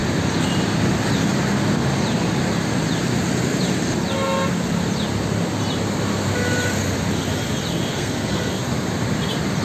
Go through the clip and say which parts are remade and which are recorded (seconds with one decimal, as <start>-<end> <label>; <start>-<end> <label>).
0.0-7.9 recorded; 7.9-8.4 remade; 8.4-9.6 recorded